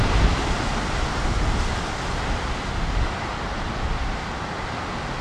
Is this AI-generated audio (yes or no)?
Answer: no